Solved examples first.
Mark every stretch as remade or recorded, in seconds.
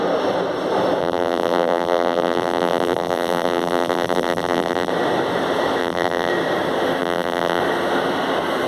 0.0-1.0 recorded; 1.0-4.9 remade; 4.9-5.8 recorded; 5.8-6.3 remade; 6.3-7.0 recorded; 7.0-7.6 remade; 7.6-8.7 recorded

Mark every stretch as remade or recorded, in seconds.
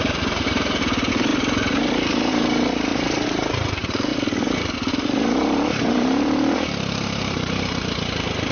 0.0-4.1 remade; 4.1-4.9 recorded; 4.9-8.5 remade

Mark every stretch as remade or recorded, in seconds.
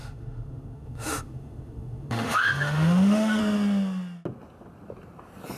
0.0-3.4 remade; 3.4-5.6 recorded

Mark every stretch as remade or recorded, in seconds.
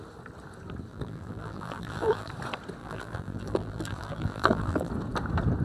0.0-0.9 recorded; 0.9-2.3 remade; 2.3-2.8 recorded; 2.8-4.9 remade; 4.9-5.6 recorded